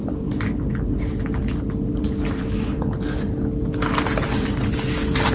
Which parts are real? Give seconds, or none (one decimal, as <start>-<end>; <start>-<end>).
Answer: 0.0-5.3